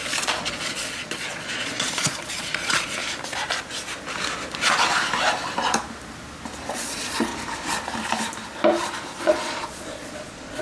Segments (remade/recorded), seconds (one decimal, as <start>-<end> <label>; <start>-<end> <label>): 0.0-3.0 remade; 3.0-6.7 recorded; 6.7-7.3 remade; 7.3-9.2 recorded; 9.2-10.6 remade